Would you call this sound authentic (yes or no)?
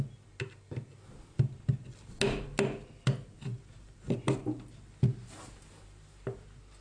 yes